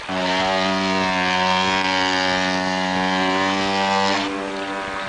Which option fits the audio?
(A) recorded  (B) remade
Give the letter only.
A